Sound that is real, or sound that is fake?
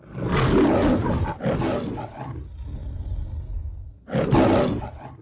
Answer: real